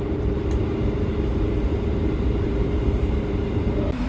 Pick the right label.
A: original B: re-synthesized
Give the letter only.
B